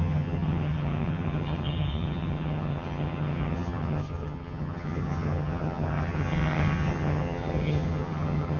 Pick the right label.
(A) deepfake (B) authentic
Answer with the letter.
A